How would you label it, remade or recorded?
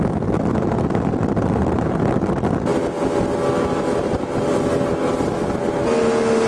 recorded